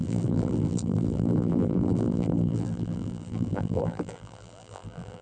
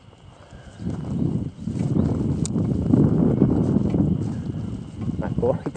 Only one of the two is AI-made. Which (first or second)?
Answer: first